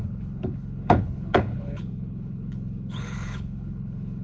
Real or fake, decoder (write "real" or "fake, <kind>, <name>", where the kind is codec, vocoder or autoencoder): fake, codec, HILCodec